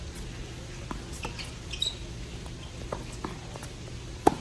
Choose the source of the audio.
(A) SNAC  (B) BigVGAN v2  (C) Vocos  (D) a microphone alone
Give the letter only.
D